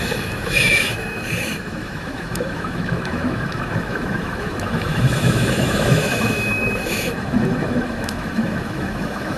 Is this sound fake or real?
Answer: fake